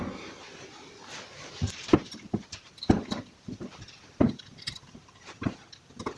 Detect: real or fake real